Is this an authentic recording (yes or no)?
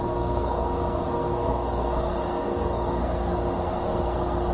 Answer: no